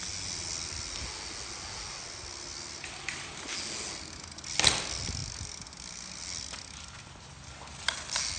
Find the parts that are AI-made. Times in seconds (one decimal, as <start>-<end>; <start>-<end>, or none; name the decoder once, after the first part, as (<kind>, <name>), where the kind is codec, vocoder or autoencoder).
none